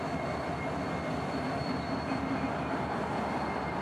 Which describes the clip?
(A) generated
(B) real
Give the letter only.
B